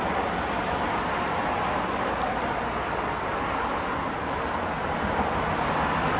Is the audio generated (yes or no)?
no